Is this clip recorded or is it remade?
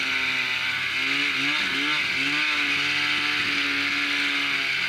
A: recorded